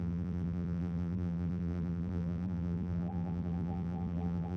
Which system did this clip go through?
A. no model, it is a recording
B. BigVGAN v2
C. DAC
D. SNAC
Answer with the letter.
B